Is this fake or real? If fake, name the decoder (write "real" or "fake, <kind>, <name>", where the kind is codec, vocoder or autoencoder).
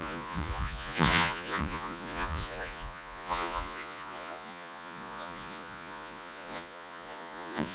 fake, vocoder, Vocos